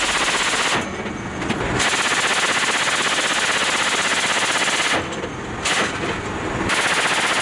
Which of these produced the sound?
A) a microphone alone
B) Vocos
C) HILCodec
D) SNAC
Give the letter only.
A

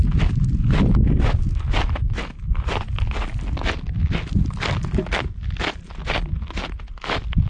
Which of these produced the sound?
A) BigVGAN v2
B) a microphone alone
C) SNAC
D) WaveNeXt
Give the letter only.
B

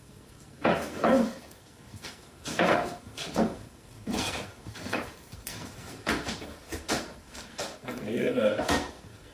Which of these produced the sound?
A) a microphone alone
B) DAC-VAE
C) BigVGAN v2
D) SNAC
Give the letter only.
D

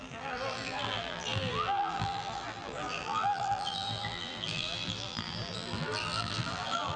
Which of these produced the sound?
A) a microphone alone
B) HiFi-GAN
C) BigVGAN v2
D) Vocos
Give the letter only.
C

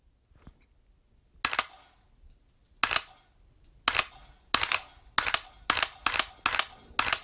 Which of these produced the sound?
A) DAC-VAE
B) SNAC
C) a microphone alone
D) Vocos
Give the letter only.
C